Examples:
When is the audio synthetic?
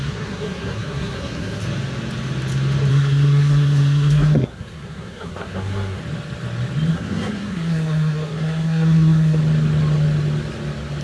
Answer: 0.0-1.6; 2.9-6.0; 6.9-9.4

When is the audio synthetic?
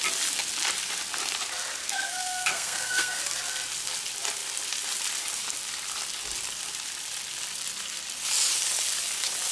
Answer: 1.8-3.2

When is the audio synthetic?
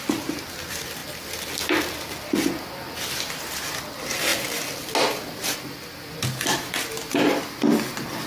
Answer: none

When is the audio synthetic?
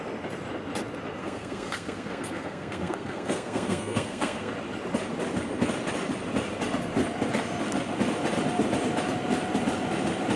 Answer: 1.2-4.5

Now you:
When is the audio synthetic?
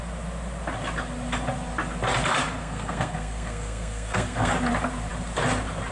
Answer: 2.6-4.5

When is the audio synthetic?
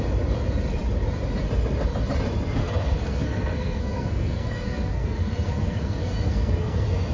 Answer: 2.6-7.1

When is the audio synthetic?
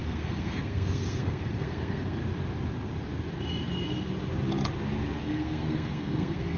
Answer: 0.0-2.2; 5.2-6.6